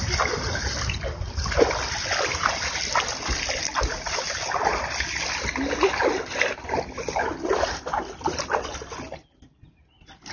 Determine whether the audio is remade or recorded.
recorded